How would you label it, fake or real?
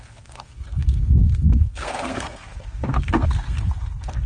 fake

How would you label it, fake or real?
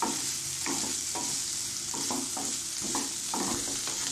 real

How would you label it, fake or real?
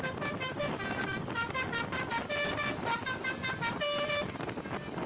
real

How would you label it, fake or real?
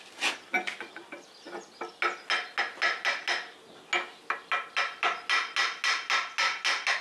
real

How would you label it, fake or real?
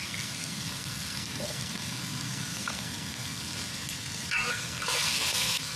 fake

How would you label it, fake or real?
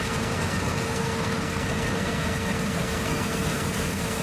fake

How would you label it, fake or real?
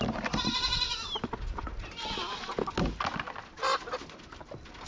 real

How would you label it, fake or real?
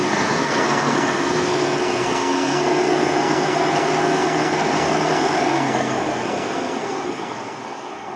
fake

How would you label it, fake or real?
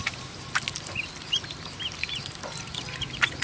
real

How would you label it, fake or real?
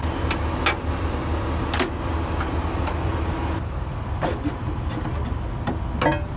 real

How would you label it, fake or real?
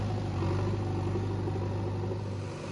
real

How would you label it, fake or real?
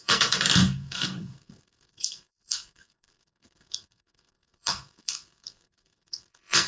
fake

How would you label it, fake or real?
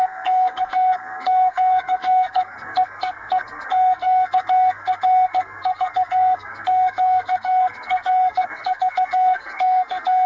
fake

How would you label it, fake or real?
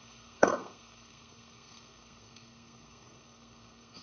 fake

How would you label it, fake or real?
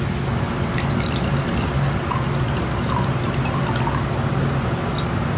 real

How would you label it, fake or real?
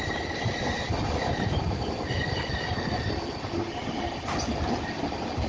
real